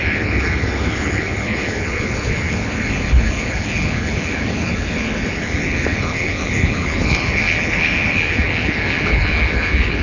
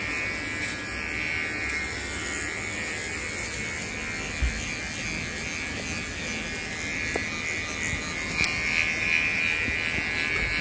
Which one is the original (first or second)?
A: second